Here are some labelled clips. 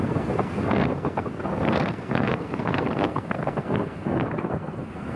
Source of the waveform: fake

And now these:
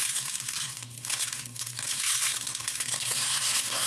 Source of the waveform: fake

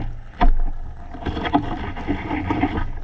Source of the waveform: real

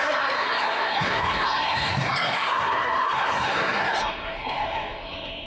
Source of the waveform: fake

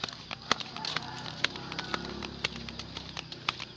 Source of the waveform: real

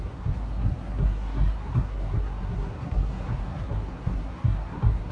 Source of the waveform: fake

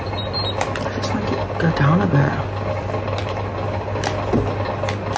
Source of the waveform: real